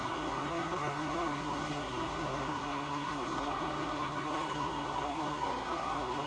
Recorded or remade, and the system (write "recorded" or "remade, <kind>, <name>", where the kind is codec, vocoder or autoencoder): remade, codec, SNAC